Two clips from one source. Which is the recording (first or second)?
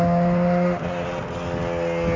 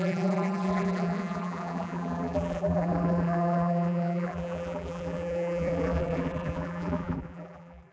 first